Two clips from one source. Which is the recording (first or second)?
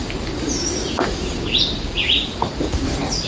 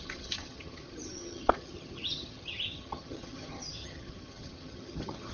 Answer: first